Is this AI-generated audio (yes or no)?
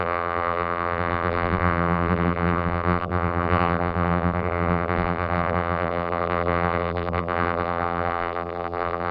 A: yes